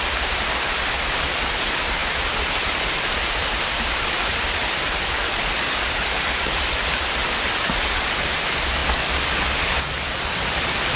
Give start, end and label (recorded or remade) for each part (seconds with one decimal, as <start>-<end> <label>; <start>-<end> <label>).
0.0-11.0 recorded